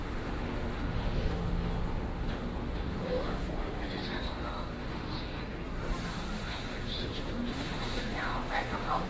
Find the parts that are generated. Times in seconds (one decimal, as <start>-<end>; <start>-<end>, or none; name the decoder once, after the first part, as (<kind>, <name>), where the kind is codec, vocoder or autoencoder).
0.0-5.4 (autoencoder, DAC-VAE); 6.1-9.1